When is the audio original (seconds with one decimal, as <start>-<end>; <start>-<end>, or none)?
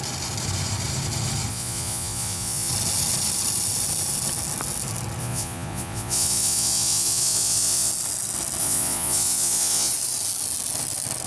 0.0-1.5; 2.7-5.2; 7.9-8.6; 9.9-11.3